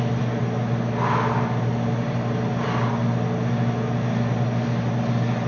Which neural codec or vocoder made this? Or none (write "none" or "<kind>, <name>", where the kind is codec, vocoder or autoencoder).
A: none